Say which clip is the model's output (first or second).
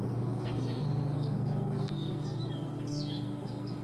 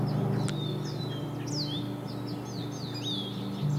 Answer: first